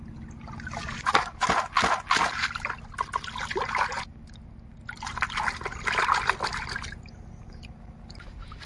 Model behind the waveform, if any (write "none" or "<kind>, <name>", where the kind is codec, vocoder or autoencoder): none